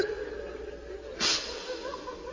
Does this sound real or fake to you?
real